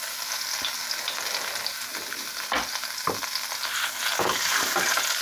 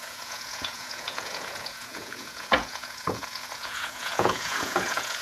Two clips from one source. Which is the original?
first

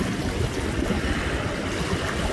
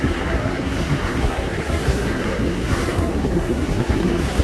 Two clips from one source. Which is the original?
first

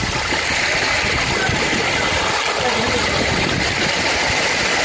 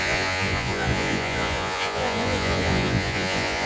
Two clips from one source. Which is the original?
first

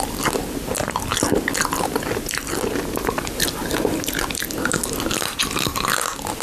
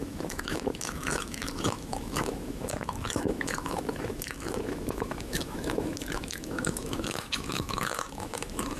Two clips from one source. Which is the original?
first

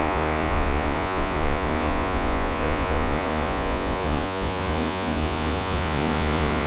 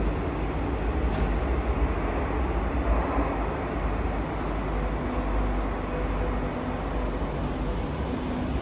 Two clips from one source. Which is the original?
second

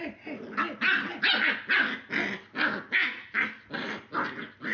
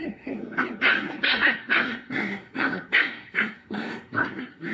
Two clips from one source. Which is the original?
first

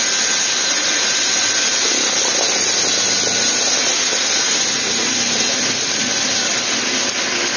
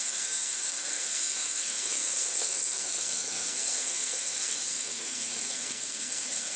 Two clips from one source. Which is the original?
first